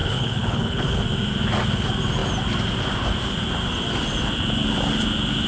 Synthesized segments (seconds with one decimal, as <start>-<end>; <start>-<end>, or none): 0.0-1.0